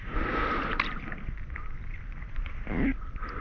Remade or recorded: remade